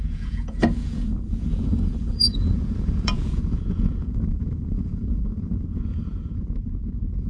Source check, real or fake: fake